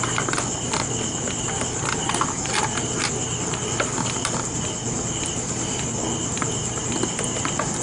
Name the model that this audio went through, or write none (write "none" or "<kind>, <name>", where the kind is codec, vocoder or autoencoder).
vocoder, BigVGAN v2